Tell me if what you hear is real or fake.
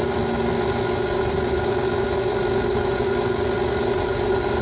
real